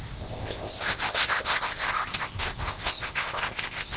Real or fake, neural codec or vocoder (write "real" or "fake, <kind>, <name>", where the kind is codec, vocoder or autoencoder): fake, codec, ZipCodec